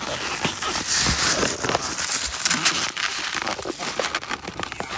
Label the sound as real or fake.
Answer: real